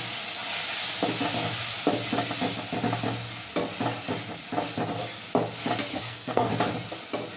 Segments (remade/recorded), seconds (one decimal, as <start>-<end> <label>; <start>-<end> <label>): 0.0-5.9 recorded; 5.9-6.5 remade; 6.5-7.4 recorded